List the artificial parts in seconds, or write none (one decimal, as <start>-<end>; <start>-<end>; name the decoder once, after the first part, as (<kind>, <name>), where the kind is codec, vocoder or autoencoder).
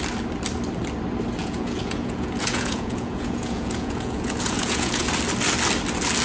1.4-5.1 (vocoder, Vocos)